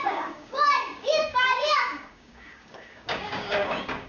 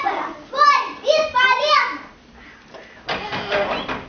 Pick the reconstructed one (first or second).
first